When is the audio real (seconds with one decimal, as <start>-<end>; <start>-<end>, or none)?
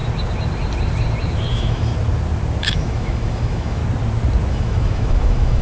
0.0-1.5; 1.9-2.6; 3.8-4.5